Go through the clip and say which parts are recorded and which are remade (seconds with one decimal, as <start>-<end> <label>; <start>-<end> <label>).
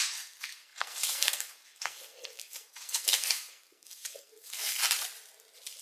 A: 0.0-4.8 remade; 4.8-5.8 recorded